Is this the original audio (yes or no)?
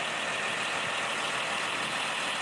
yes